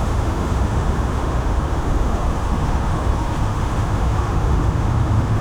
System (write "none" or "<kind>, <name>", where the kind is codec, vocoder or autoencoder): autoencoder, DAC-VAE